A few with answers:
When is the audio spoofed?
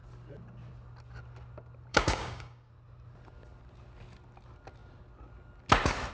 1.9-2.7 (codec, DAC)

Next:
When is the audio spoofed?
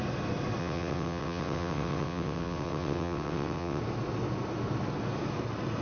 0.6-3.8 (vocoder, WaveNeXt)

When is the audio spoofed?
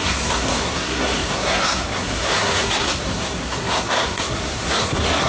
0.0-5.3 (codec, SNAC)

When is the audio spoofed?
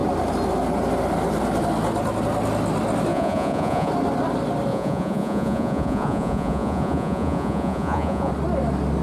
3.1-3.9 (vocoder, Vocos); 4.7-8.3